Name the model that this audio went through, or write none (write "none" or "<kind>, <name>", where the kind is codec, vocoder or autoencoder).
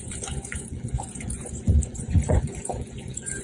vocoder, Vocos